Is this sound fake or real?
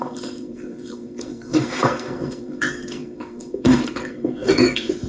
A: fake